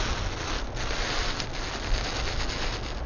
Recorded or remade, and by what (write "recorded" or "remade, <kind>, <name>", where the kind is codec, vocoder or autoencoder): recorded